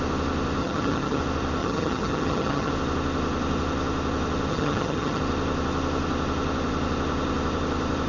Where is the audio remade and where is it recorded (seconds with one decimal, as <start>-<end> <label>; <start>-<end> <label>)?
0.0-0.6 recorded; 0.6-1.2 remade; 1.2-1.6 recorded; 1.6-2.7 remade; 2.7-4.5 recorded; 4.5-5.2 remade; 5.2-8.1 recorded